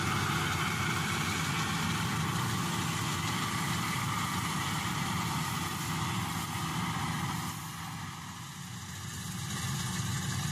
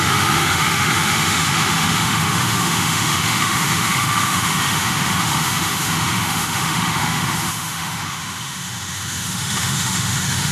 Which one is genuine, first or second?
first